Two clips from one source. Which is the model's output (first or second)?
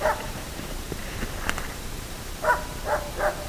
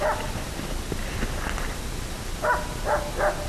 first